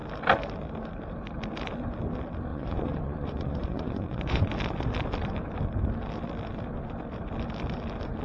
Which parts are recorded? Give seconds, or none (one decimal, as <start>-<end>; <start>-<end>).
0.0-2.5; 4.5-8.2